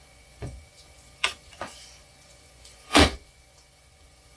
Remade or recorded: remade